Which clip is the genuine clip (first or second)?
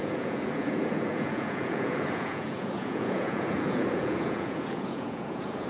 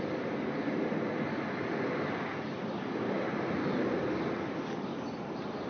second